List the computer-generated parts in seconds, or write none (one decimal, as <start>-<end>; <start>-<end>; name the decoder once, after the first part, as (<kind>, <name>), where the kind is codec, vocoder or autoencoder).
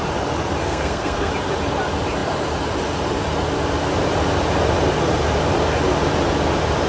0.6-1.3 (codec, SNAC)